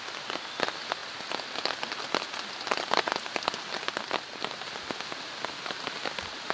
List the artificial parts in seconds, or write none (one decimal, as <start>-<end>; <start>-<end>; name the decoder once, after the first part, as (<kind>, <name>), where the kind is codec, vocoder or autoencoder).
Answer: none